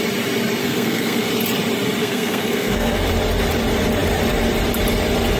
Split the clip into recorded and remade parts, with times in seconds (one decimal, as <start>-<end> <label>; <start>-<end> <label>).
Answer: 0.0-0.6 recorded; 0.6-1.3 remade; 1.3-2.0 recorded; 2.0-3.0 remade; 3.0-5.4 recorded